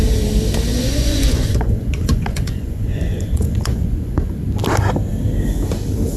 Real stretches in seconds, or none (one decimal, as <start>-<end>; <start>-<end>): 0.0-0.7; 4.4-6.2